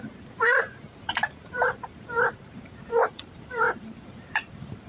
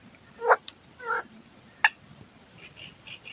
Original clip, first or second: second